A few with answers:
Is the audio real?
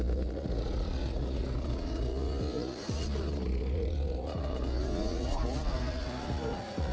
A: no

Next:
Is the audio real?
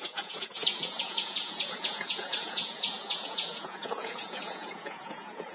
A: no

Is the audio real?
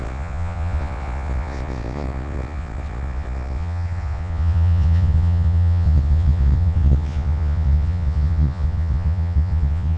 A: no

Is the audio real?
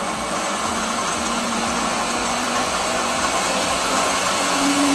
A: no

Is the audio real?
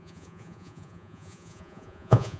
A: no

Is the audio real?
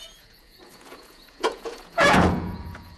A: no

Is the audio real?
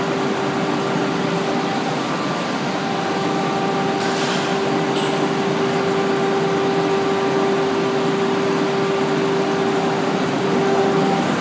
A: yes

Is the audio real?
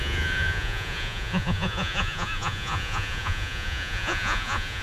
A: no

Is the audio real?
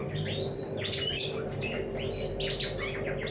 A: yes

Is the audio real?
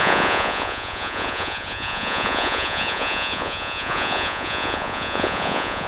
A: no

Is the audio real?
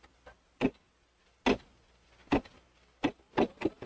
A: yes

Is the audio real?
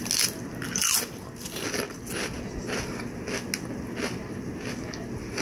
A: yes